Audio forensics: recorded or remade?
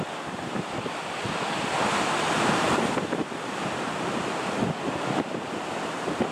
recorded